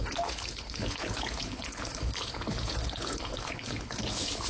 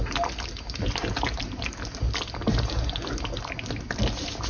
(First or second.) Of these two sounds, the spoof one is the first